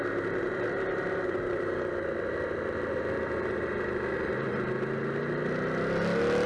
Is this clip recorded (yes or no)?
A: yes